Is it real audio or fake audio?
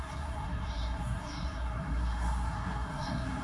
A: fake